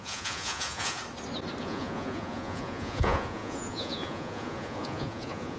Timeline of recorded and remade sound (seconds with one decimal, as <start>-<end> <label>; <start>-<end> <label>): 0.0-1.0 remade; 1.0-1.6 recorded; 1.6-5.6 remade